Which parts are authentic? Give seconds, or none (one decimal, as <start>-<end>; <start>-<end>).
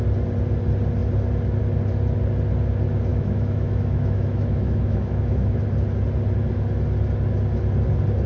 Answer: 0.0-3.1; 5.6-8.3